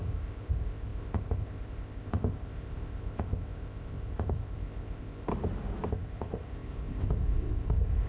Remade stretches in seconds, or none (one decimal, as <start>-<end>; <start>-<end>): 0.0-5.3; 5.9-8.1

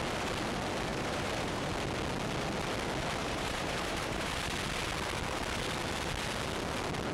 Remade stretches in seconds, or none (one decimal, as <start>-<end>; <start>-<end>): 0.9-1.7; 3.2-4.3

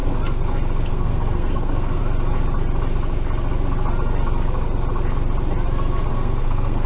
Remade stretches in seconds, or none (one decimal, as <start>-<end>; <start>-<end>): 0.9-2.0; 6.1-6.9

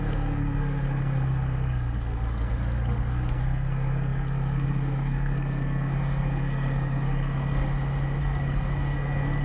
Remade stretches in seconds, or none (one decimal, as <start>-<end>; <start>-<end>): 0.0-7.6; 8.2-9.4

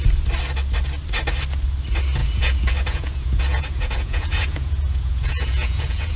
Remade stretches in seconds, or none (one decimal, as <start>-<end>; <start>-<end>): 2.2-6.2

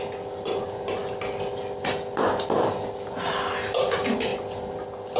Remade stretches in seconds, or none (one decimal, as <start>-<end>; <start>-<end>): none

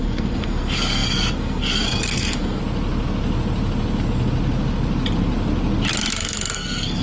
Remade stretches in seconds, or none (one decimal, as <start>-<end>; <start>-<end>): 0.0-2.6; 6.1-7.0

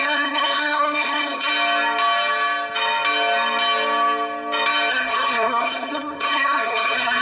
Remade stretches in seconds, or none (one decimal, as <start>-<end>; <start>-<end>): 0.0-1.5; 4.9-7.2